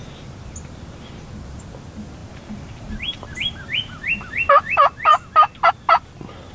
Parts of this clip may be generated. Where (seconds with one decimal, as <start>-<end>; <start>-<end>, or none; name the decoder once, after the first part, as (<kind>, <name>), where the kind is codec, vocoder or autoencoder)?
2.2-4.3 (vocoder, BigVGAN v2)